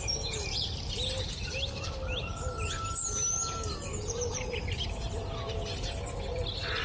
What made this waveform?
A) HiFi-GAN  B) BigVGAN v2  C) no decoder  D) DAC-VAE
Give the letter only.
C